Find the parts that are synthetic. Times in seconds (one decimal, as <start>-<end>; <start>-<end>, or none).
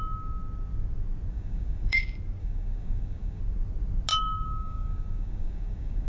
1.3-2.0; 2.4-3.4; 4.1-6.1